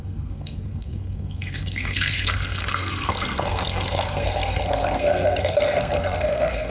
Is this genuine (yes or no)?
no